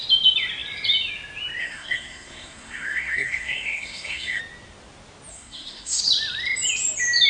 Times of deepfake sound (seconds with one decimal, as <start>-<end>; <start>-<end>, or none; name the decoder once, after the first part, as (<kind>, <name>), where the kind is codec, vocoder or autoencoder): 1.6-4.4 (codec, SNAC); 5.3-6.0